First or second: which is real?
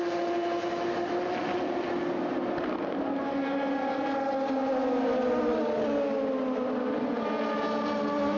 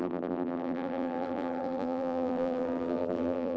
first